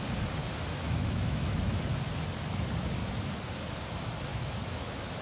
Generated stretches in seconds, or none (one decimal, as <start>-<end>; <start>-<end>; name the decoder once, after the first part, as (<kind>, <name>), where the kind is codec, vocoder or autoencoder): 0.4-1.8 (autoencoder, DAC-VAE); 4.3-5.2